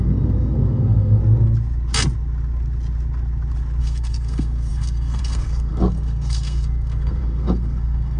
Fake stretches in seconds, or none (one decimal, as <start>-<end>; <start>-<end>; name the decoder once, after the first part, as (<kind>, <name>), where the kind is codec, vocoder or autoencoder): 0.0-1.2 (codec, SNAC); 3.8-8.2

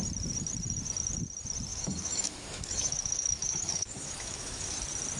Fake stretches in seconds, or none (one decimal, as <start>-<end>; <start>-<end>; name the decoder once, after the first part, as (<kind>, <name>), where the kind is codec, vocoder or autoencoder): 1.7-4.8 (autoencoder, DAC-VAE)